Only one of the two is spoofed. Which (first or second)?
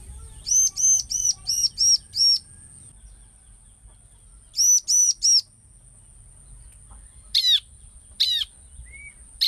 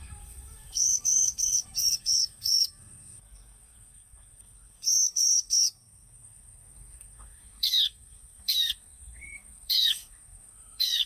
second